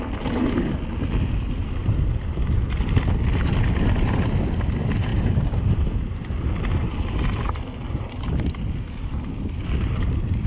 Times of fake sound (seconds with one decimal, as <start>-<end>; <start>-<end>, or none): 1.8-2.6; 5.1-6.4